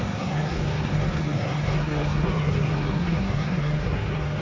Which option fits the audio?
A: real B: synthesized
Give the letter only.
B